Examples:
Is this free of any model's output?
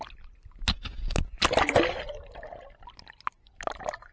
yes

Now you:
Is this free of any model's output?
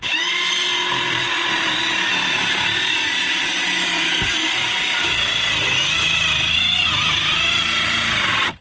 yes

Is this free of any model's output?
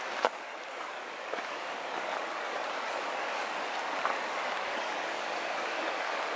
no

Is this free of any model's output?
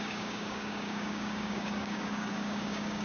no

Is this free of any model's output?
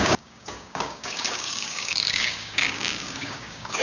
no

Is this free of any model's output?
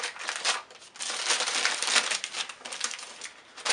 yes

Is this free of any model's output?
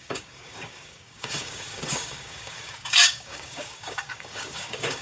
no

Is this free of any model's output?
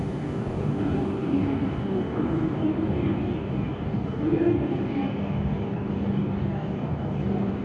no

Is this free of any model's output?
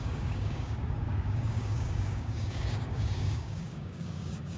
no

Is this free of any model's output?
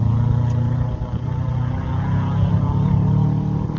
yes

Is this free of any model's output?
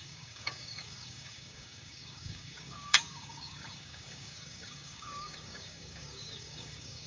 no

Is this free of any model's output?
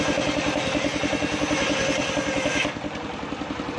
yes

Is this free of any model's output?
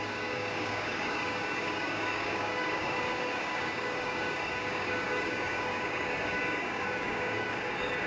no